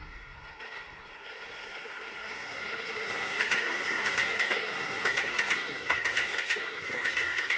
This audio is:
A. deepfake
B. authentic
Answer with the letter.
A